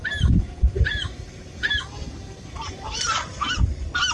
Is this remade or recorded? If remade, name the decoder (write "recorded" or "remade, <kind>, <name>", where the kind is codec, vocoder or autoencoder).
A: remade, vocoder, BigVGAN v2